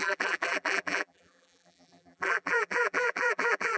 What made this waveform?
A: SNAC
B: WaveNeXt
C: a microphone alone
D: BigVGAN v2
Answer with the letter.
D